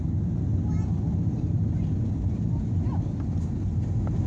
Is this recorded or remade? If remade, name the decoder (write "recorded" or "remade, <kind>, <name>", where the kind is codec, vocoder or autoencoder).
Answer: recorded